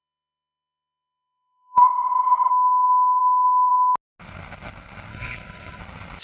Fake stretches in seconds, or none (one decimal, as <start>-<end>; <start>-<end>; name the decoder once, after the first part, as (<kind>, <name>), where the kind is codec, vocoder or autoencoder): 0.0-2.5 (codec, HILCodec); 5.1-5.8